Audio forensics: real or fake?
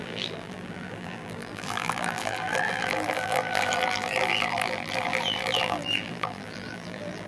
fake